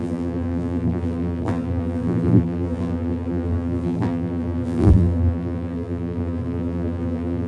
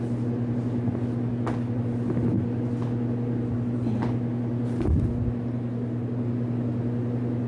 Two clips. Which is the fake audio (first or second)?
first